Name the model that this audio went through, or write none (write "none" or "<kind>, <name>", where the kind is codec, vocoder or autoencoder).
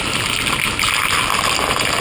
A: none